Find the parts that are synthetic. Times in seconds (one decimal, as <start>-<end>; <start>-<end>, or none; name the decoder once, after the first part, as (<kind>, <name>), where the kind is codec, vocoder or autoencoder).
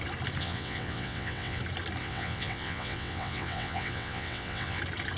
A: 0.4-1.6 (vocoder, WaveNeXt); 2.0-4.8